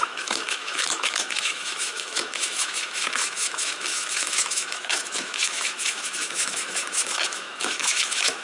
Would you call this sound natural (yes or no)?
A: no